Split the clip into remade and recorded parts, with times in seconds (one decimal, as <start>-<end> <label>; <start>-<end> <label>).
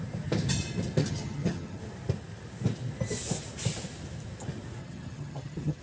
0.0-1.0 recorded; 1.0-1.8 remade; 1.8-4.8 recorded; 4.8-5.8 remade